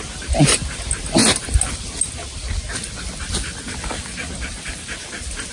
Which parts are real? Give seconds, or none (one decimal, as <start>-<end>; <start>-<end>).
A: 0.0-5.5